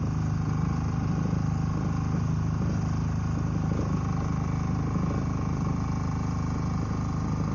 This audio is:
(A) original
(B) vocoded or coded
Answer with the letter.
A